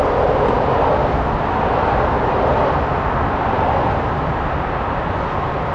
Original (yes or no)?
yes